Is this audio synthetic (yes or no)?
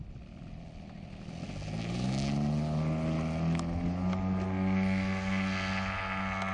no